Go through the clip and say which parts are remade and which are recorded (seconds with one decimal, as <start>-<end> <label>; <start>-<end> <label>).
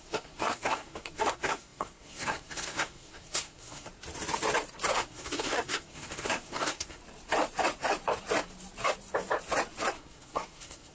0.0-3.9 remade; 3.9-4.9 recorded; 4.9-7.0 remade; 7.0-9.9 recorded; 9.9-10.9 remade